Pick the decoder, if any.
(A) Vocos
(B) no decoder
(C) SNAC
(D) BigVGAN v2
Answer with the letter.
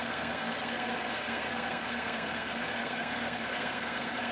C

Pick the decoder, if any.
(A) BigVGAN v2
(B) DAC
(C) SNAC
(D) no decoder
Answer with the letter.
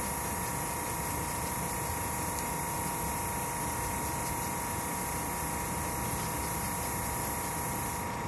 D